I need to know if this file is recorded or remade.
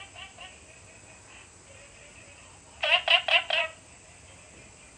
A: recorded